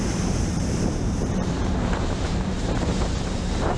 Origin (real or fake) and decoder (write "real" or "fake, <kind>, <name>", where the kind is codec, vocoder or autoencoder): fake, vocoder, BigVGAN v2